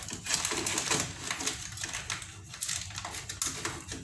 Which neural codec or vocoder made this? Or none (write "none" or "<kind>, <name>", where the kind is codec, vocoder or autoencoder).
none